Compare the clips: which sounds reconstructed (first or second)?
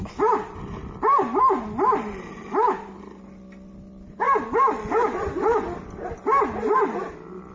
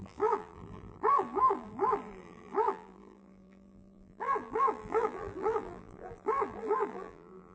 second